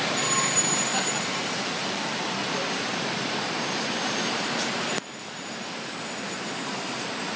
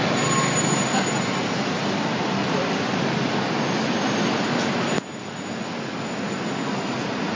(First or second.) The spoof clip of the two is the first